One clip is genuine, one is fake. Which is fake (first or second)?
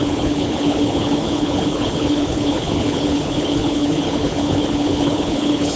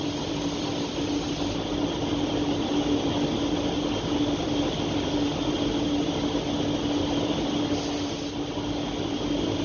first